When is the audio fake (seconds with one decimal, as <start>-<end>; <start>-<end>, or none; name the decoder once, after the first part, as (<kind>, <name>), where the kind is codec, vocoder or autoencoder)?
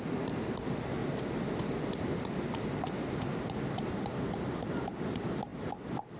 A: none